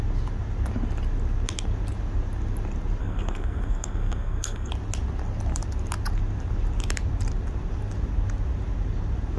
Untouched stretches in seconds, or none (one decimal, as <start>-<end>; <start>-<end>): 0.0-3.0; 4.7-9.4